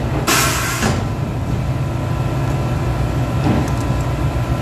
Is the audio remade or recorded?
recorded